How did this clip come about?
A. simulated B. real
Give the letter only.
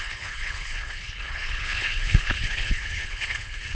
A